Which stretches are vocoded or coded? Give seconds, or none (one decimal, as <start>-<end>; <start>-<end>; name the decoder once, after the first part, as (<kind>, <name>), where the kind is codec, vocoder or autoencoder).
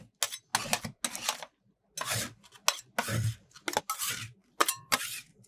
4.4-5.0 (vocoder, BigVGAN v2)